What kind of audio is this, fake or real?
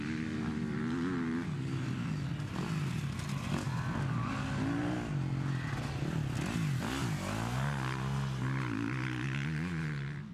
real